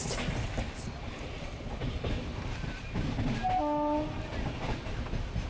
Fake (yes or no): no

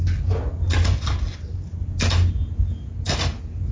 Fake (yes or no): no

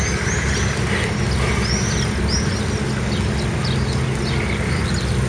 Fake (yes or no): no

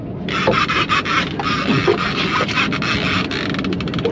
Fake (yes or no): no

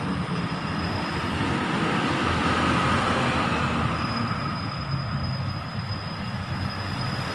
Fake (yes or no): no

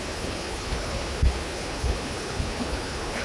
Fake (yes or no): yes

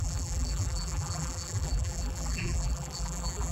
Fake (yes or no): yes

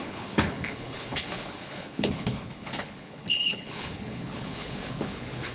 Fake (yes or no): yes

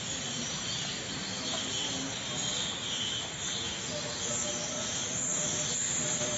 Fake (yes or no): no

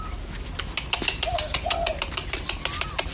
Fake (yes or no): no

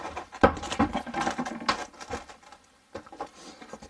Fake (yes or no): no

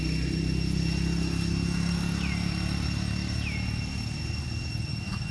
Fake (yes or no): no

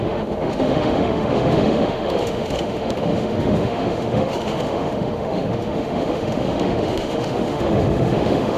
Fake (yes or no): yes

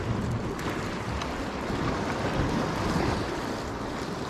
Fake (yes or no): no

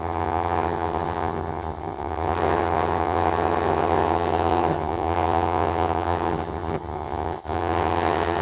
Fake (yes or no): yes